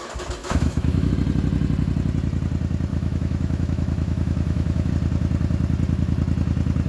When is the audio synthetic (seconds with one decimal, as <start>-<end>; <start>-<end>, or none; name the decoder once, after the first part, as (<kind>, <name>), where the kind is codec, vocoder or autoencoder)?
0.4-1.1 (autoencoder, DAC-VAE); 2.9-4.9